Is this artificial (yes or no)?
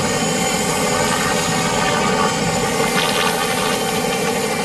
no